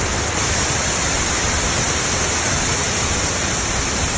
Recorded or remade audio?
recorded